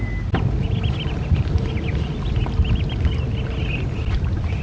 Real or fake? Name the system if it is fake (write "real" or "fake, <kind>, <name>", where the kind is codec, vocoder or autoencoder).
real